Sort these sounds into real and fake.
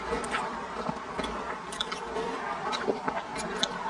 real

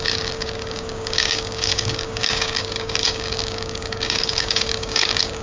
fake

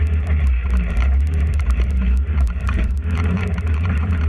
fake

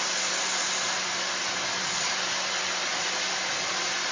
real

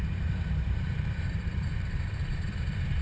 fake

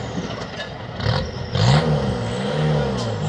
real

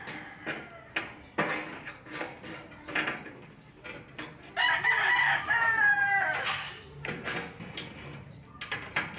real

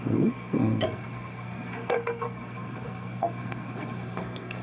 fake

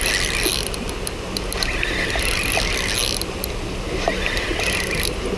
real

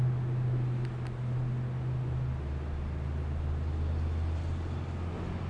real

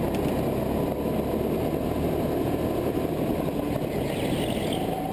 real